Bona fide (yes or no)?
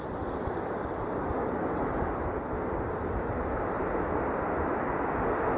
yes